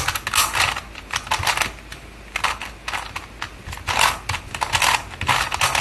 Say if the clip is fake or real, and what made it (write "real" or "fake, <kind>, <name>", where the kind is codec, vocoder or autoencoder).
real